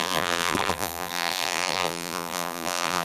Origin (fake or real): fake